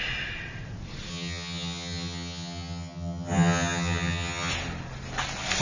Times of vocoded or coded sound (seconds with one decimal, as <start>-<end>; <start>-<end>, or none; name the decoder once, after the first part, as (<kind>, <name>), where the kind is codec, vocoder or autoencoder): 1.1-4.5 (vocoder, HiFi-GAN)